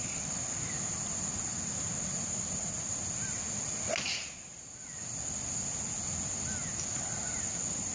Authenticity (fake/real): real